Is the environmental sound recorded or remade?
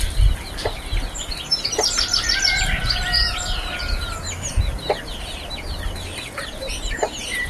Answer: recorded